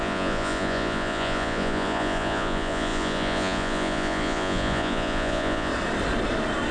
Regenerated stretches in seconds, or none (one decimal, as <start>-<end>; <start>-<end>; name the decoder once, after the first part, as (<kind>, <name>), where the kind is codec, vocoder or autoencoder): 0.0-5.7 (vocoder, Vocos)